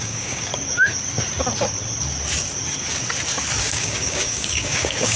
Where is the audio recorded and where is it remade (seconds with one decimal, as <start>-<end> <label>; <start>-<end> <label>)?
0.0-0.5 remade; 0.5-3.6 recorded; 3.6-5.2 remade